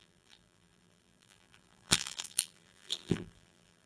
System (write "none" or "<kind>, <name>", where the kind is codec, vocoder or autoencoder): vocoder, BigVGAN v2